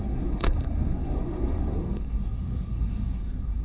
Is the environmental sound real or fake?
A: fake